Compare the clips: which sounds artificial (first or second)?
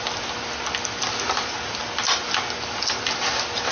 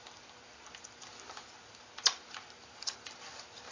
second